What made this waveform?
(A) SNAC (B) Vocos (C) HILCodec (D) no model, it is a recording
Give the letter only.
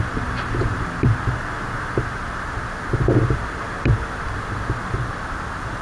D